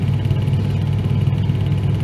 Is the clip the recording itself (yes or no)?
yes